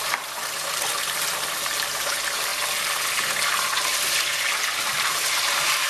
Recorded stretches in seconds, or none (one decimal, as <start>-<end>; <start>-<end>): 0.9-1.9; 2.5-3.5; 3.9-4.8

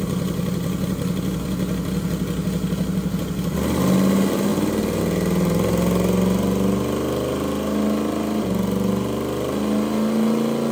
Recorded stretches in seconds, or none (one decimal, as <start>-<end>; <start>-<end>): 0.0-10.7

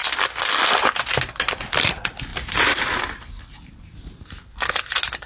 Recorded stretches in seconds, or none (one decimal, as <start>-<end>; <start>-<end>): 0.0-2.3; 4.6-5.3

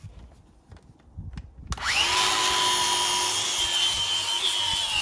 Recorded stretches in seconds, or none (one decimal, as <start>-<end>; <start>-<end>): 0.0-5.0

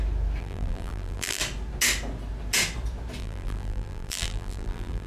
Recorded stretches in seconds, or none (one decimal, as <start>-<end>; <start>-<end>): 0.0-0.4; 1.4-3.2

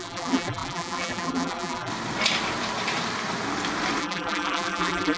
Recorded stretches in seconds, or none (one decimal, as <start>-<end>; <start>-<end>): 1.9-4.0